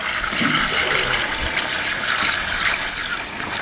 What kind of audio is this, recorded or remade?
recorded